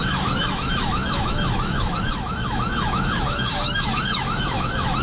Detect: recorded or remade remade